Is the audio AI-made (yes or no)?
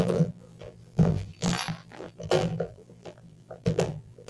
yes